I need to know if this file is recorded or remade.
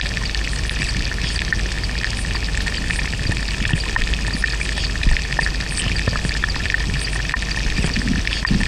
recorded